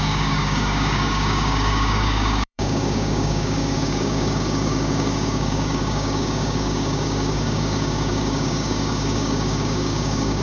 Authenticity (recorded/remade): remade